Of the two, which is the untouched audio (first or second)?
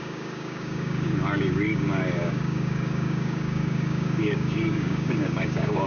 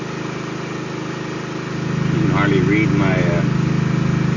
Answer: second